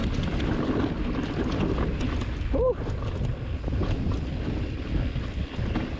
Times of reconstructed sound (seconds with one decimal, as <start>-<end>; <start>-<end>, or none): none